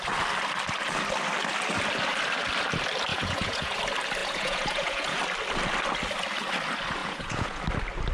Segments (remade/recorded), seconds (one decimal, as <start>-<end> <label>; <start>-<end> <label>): 0.0-3.1 recorded; 3.1-3.8 remade; 3.8-4.2 recorded; 4.2-5.2 remade; 5.2-7.0 recorded; 7.0-7.6 remade; 7.6-8.1 recorded